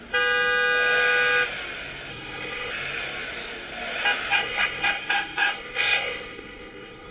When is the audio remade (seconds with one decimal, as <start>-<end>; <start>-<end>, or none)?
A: 2.1-2.7; 4.3-7.1